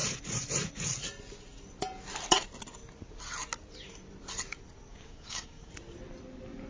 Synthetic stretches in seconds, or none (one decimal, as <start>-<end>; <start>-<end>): 4.9-5.7